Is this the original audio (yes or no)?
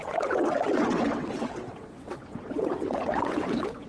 no